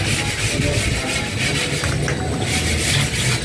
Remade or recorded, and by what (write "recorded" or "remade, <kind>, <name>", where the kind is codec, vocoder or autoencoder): recorded